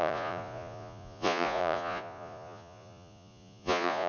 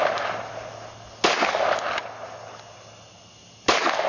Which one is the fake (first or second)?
first